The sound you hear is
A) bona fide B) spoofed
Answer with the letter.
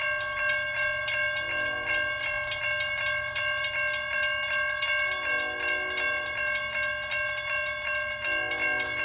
A